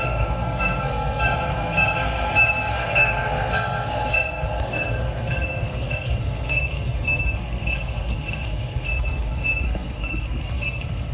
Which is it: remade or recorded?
remade